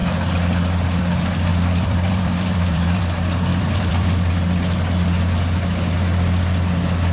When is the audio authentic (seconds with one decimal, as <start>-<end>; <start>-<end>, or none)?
0.0-1.5; 3.0-3.5; 4.3-7.1